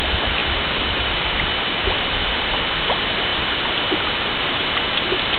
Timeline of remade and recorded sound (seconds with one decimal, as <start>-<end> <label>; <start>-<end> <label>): 0.0-5.4 recorded